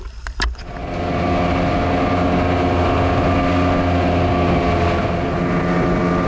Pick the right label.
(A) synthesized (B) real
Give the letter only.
B